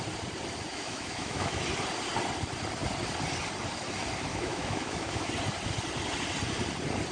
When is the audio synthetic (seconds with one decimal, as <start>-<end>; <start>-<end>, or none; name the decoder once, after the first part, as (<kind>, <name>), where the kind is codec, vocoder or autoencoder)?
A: 0.7-1.6 (autoencoder, DAC-VAE); 4.3-5.3